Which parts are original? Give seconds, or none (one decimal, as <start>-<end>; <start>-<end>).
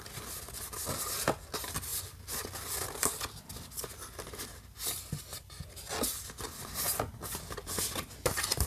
0.0-8.7